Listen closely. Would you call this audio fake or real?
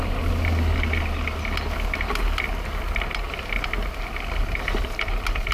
real